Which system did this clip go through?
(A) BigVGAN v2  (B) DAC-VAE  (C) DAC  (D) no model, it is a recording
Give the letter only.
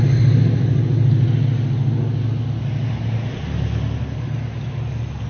D